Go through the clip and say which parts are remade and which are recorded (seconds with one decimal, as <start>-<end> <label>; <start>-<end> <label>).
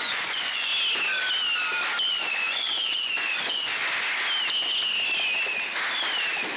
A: 0.0-0.7 remade; 0.7-2.2 recorded; 2.2-3.8 remade; 3.8-6.6 recorded